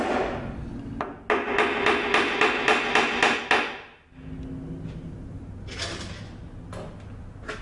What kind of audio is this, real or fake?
real